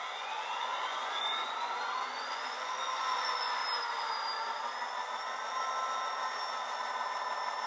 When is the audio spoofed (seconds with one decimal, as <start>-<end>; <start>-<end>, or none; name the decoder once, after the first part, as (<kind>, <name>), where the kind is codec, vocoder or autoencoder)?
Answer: 0.0-3.6 (vocoder, Vocos)